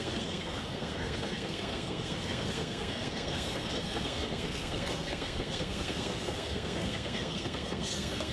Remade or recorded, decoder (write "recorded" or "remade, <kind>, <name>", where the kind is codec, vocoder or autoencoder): remade, codec, SNAC